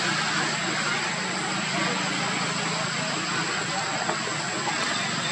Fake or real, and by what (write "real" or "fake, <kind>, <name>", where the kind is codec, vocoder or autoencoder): real